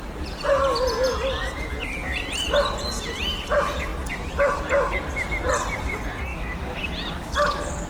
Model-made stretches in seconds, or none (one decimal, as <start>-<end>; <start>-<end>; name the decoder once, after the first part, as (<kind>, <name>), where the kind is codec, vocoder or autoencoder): 6.3-6.8 (autoencoder, DAC-VAE)